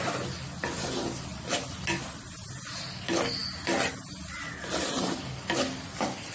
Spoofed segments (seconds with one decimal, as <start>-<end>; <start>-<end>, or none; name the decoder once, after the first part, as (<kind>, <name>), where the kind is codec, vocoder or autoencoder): none